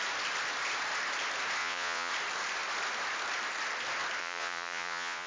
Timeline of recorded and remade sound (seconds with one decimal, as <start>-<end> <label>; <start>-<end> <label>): 0.0-1.6 recorded; 1.6-2.1 remade; 2.1-4.2 recorded; 4.2-5.3 remade